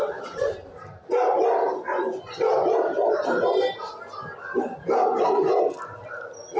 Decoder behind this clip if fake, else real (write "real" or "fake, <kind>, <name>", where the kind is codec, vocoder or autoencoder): real